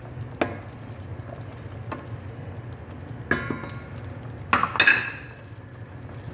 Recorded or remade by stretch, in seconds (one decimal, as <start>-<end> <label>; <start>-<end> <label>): 0.0-6.3 recorded